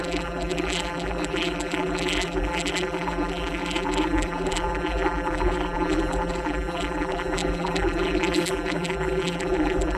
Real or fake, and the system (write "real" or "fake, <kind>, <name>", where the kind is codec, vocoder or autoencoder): fake, vocoder, BigVGAN v2